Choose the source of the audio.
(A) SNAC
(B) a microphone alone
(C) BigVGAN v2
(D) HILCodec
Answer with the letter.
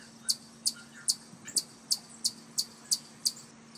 B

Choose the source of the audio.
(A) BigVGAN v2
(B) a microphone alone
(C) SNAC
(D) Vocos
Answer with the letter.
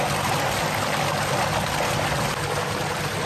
B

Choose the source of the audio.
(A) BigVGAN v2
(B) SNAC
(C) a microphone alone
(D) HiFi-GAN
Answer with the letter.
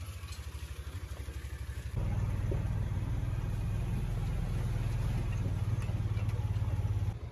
C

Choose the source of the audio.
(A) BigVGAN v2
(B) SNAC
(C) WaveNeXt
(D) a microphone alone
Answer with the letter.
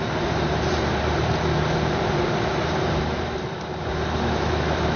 A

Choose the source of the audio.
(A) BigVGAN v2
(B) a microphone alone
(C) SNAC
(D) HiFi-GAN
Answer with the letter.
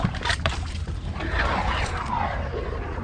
A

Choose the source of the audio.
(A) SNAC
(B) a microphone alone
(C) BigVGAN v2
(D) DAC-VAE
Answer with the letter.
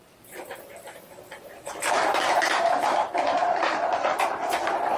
C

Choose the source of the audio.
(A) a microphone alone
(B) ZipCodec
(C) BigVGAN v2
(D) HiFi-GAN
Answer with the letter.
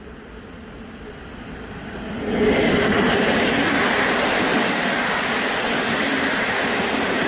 C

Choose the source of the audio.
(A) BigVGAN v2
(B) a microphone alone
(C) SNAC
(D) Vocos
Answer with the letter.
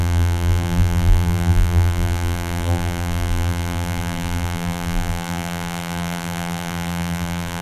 A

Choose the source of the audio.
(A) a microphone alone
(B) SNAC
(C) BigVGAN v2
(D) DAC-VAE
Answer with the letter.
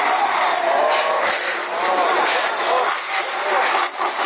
C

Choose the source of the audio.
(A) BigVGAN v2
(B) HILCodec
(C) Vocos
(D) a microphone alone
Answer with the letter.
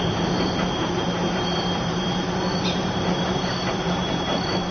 A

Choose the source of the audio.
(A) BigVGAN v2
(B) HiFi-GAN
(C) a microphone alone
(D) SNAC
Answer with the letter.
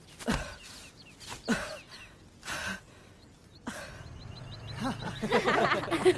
C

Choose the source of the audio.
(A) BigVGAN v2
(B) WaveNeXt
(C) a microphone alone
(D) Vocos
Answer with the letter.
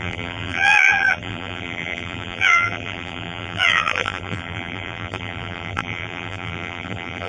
A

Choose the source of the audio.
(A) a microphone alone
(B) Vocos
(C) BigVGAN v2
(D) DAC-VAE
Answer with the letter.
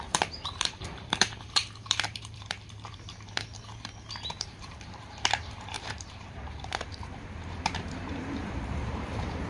C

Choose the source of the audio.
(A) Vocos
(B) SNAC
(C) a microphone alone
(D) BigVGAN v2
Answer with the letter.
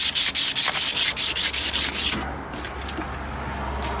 C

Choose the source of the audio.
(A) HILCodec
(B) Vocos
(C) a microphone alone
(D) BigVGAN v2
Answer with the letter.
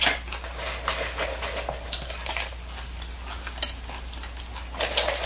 C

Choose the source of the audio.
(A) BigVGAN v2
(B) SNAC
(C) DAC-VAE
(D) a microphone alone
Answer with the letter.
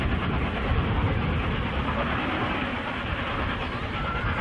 D